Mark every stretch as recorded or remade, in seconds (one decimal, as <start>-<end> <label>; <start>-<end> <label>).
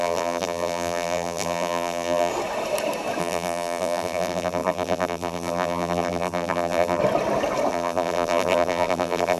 0.0-2.3 remade; 2.3-3.2 recorded; 3.2-7.0 remade; 7.0-7.7 recorded; 7.7-9.4 remade